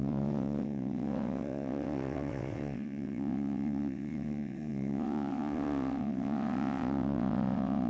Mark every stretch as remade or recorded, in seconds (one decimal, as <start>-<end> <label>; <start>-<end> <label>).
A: 0.0-7.9 remade

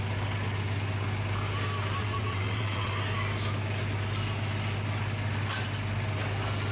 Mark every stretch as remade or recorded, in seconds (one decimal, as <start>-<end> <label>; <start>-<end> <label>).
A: 0.0-2.0 recorded; 2.0-2.9 remade; 2.9-6.7 recorded

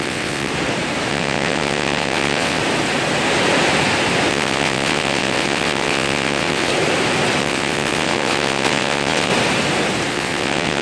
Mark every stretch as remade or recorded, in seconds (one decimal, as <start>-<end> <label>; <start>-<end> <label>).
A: 0.0-0.5 remade; 0.5-1.1 recorded; 1.1-2.6 remade; 2.6-4.3 recorded; 4.3-6.7 remade; 6.7-7.4 recorded; 7.4-9.3 remade; 9.3-10.1 recorded; 10.1-10.8 remade